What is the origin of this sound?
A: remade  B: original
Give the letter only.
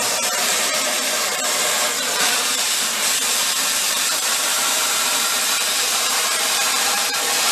A